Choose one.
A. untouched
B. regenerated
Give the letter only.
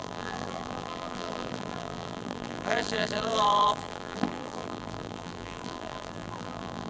B